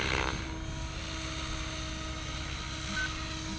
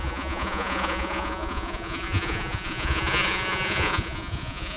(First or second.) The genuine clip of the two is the first